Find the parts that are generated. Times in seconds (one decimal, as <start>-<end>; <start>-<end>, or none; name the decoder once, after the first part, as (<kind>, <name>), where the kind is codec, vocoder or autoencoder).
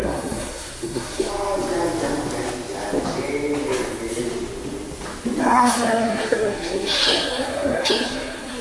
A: 0.0-1.3 (codec, SNAC); 5.4-8.6